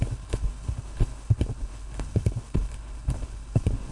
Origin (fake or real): fake